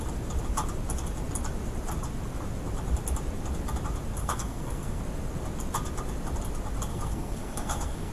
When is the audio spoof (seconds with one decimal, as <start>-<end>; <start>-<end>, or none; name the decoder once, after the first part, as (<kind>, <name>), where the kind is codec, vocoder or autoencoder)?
4.2-5.0 (codec, SNAC); 6.9-8.1